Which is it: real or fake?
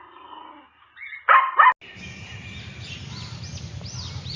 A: real